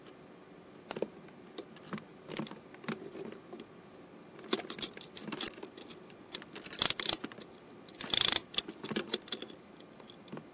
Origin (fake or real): real